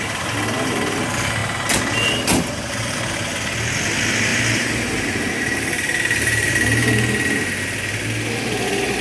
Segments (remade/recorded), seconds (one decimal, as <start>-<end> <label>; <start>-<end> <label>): 0.0-4.3 recorded; 4.3-6.5 remade; 6.5-9.0 recorded

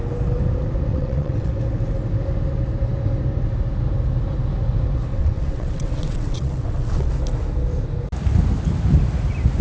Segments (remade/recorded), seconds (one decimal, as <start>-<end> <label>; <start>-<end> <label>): 0.0-0.9 recorded; 0.9-1.5 remade; 1.5-5.1 recorded; 5.1-7.1 remade; 7.1-9.6 recorded

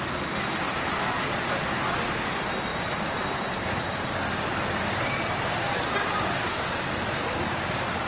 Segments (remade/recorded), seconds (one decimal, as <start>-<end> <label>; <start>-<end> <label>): 0.0-2.7 recorded; 2.7-5.8 remade; 5.8-8.1 recorded

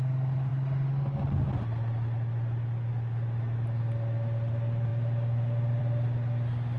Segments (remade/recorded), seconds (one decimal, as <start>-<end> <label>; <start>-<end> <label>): 0.0-6.8 recorded

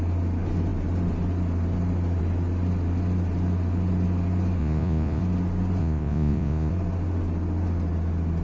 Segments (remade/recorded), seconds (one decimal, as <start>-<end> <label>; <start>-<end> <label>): 0.0-4.6 recorded; 4.6-5.2 remade; 5.2-5.8 recorded; 5.8-6.7 remade; 6.7-8.4 recorded

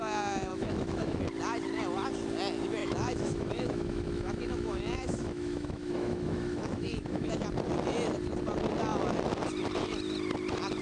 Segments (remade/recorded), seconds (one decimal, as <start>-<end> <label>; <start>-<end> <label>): 0.0-0.5 recorded; 0.5-1.2 remade; 1.2-2.8 recorded; 2.8-7.3 remade; 7.3-10.8 recorded

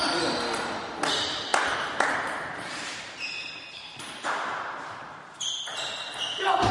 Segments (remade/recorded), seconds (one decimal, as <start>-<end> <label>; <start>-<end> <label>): 0.0-1.5 recorded; 1.5-5.5 remade; 5.5-6.7 recorded